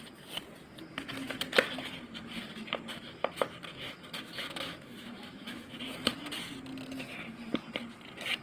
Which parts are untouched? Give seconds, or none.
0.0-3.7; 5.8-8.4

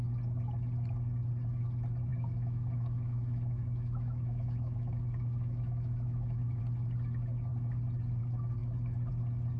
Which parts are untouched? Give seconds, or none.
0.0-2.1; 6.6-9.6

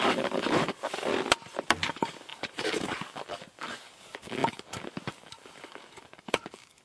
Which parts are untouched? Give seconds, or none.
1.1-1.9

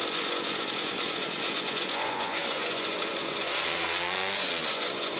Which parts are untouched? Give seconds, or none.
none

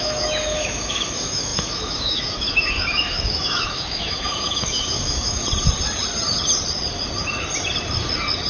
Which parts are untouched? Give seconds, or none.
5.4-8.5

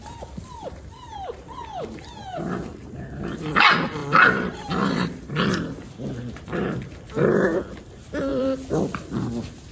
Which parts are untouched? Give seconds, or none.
0.0-8.3; 9.2-9.7